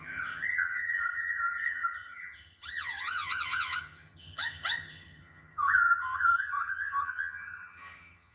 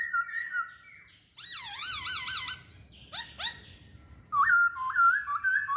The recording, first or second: second